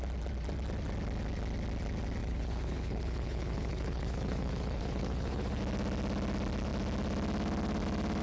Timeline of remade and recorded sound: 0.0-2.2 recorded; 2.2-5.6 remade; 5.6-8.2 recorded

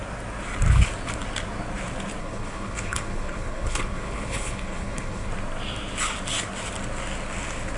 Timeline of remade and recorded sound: 0.0-2.2 recorded; 2.2-5.3 remade; 5.3-7.8 recorded

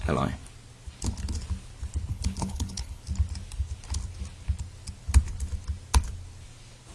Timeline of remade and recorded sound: 0.0-2.1 recorded; 2.1-3.0 remade; 3.0-6.9 recorded

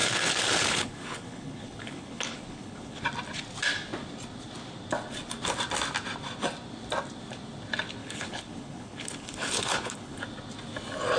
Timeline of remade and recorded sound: 0.0-3.0 remade; 3.0-8.0 recorded; 8.0-10.2 remade; 10.2-11.2 recorded

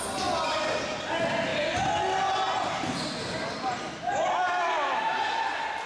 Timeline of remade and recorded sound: 0.0-5.9 recorded